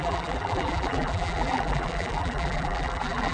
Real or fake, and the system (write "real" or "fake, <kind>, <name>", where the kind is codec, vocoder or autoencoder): fake, vocoder, BigVGAN v2